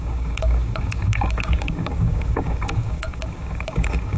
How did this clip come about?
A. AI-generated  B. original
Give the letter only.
A